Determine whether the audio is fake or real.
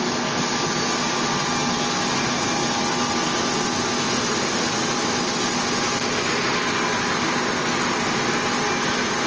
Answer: real